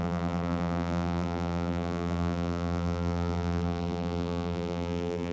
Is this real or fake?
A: fake